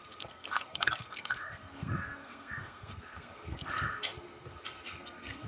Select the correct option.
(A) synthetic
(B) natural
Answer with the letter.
A